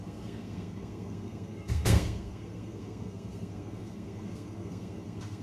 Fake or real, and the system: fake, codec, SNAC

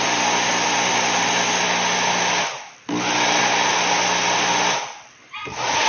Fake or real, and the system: real